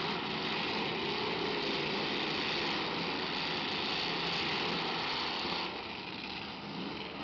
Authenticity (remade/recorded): recorded